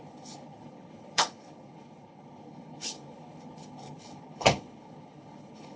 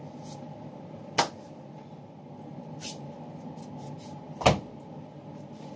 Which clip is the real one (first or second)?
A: second